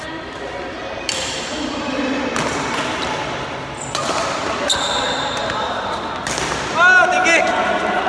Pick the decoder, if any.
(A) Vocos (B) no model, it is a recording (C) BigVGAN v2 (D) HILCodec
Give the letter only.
B